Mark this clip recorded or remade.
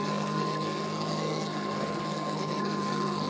remade